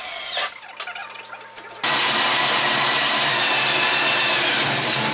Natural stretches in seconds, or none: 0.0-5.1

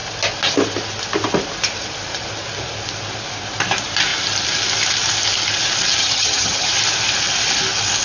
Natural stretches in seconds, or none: 0.0-6.0; 6.7-8.0